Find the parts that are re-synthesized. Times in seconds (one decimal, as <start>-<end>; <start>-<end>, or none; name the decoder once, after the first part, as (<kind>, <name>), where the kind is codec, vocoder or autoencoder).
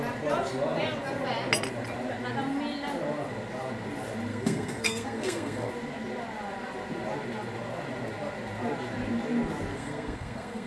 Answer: 4.3-5.7 (codec, SNAC); 9.7-10.7